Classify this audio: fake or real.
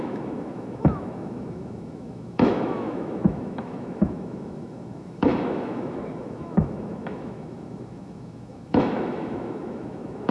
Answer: fake